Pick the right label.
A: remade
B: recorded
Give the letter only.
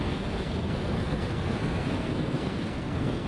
A